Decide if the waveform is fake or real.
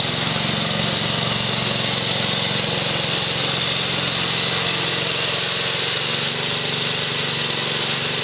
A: real